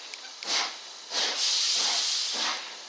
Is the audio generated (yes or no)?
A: no